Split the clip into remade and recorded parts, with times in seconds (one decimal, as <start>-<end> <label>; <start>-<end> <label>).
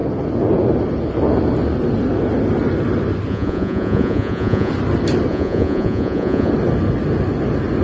0.0-3.3 recorded; 3.3-4.7 remade; 4.7-5.3 recorded; 5.3-6.5 remade; 6.5-7.8 recorded